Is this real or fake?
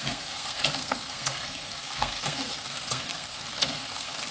fake